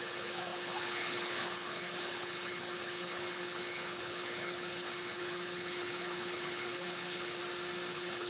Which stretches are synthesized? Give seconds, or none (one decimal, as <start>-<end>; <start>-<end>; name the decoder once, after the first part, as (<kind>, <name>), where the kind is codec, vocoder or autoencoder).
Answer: 0.0-7.4 (codec, HILCodec); 7.9-8.3